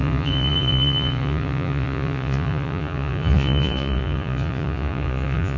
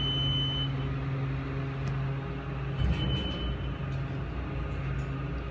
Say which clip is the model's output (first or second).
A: first